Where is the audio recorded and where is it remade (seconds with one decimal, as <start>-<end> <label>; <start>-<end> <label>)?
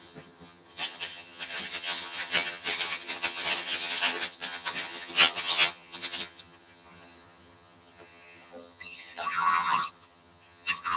0.0-11.0 remade